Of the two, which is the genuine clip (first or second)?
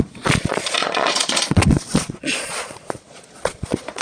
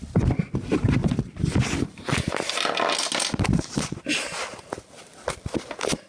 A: second